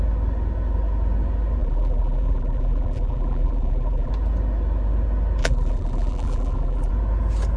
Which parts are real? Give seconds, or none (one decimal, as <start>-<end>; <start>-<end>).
0.0-1.6; 4.1-5.4; 6.9-7.6